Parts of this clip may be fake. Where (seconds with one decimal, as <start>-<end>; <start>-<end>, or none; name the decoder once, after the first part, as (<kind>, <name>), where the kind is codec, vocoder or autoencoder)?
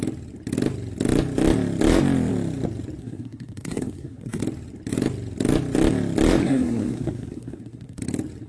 3.0-4.4 (codec, SNAC); 6.4-8.0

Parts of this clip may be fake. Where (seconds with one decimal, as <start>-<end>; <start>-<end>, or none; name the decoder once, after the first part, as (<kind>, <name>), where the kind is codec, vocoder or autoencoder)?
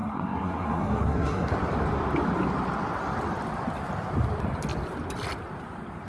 0.0-1.5 (codec, SNAC)